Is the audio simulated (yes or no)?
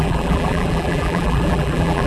yes